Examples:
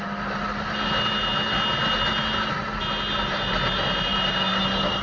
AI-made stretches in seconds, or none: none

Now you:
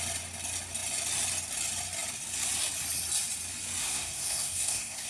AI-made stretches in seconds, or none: 3.8-5.1 (codec, SNAC)

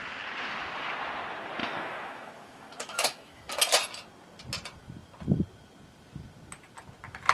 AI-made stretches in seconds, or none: 1.6-3.5 (autoencoder, DAC-VAE)